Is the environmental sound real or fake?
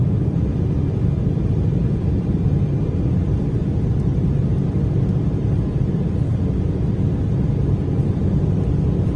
fake